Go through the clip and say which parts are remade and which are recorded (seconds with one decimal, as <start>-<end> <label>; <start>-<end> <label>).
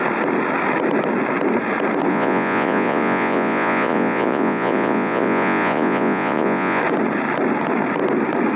0.0-2.1 recorded; 2.1-6.8 remade; 6.8-8.6 recorded